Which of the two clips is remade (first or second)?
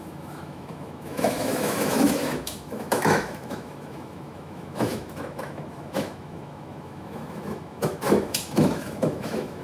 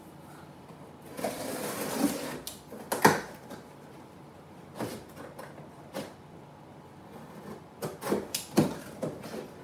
first